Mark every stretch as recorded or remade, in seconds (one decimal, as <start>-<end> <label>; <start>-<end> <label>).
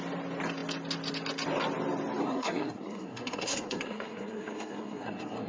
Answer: 0.0-2.2 recorded; 2.2-5.5 remade